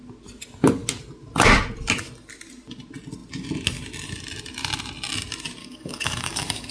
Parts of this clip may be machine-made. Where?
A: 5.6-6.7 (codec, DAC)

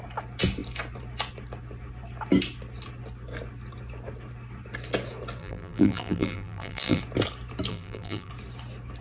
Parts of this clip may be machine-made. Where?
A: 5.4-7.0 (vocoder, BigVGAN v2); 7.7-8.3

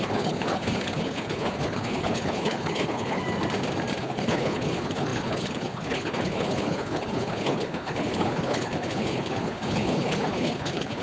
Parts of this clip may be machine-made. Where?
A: 0.0-3.2 (codec, HILCodec); 4.0-11.0

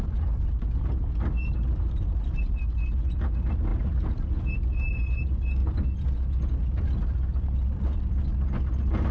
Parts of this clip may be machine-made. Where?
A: 3.7-4.3 (vocoder, BigVGAN v2); 5.6-6.3